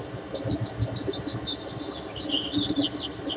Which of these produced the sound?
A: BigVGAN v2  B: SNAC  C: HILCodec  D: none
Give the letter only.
D